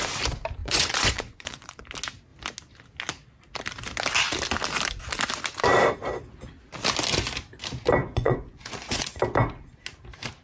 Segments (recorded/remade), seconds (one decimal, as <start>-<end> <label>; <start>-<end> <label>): 0.0-0.6 recorded; 0.6-1.8 remade; 1.8-8.0 recorded; 8.0-9.2 remade; 9.2-10.4 recorded